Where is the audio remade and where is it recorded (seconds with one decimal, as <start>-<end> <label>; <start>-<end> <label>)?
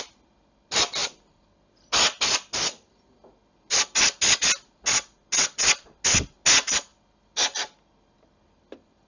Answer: 0.0-9.1 recorded